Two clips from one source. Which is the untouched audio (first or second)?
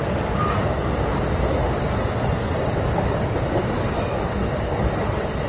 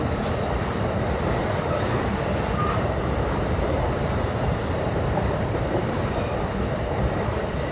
first